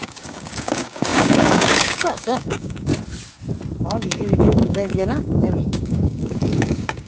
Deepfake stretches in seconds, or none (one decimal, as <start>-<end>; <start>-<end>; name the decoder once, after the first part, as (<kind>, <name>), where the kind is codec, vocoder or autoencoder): 0.0-2.9 (codec, DAC); 3.8-7.1